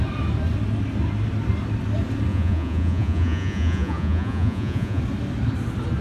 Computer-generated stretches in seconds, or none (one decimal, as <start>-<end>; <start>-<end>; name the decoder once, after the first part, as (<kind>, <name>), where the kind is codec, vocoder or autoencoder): 2.3-5.0 (vocoder, Vocos)